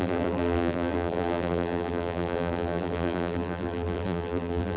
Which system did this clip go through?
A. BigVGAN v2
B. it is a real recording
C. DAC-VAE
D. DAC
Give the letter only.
A